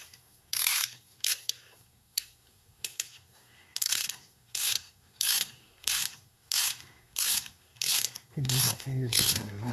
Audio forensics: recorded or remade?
remade